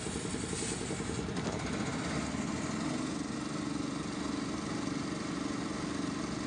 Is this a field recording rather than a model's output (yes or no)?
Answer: yes